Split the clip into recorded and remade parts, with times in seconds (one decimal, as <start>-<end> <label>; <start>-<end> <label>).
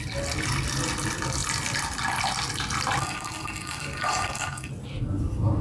0.0-3.0 recorded; 3.0-4.7 remade; 4.7-5.6 recorded